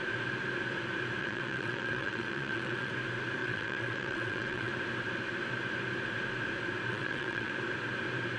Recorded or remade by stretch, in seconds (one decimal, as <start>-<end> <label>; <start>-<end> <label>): 0.0-1.2 recorded; 1.2-2.9 remade; 2.9-3.4 recorded; 3.4-4.7 remade; 4.7-6.9 recorded; 6.9-7.5 remade; 7.5-8.4 recorded